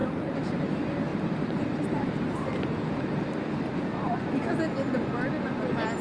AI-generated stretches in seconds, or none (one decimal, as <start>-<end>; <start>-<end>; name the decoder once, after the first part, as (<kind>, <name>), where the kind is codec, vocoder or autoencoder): 0.0-0.7 (vocoder, BigVGAN v2); 1.1-4.2